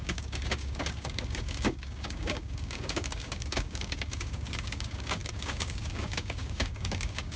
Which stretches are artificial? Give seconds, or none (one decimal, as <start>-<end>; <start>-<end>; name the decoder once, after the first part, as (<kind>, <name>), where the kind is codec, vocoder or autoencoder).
0.0-7.4 (codec, DAC)